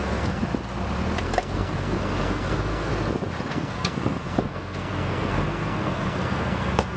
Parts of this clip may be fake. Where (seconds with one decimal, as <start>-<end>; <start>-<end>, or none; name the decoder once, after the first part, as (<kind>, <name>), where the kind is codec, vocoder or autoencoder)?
0.0-0.4 (codec, SNAC); 1.2-2.9; 3.5-7.0